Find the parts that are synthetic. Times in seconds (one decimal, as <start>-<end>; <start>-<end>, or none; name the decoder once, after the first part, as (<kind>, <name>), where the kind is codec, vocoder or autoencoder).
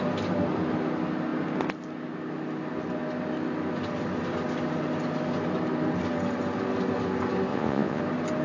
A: 7.5-8.0 (vocoder, Vocos)